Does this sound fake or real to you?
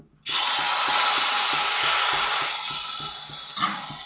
real